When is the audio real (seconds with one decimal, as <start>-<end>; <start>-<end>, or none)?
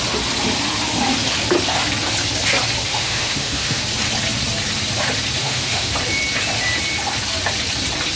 0.0-2.9; 3.8-5.4; 5.9-8.2